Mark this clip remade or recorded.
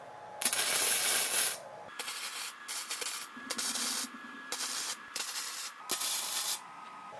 recorded